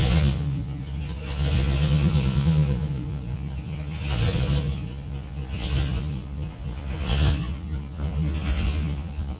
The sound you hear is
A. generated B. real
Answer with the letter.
A